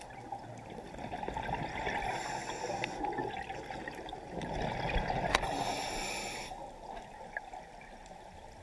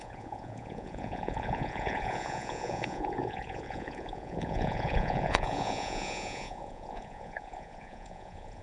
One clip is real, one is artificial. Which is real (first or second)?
first